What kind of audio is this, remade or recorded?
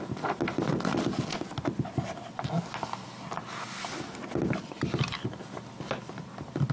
recorded